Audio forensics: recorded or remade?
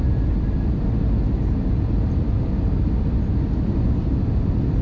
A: recorded